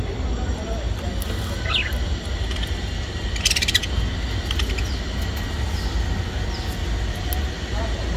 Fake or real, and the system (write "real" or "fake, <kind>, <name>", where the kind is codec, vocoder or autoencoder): real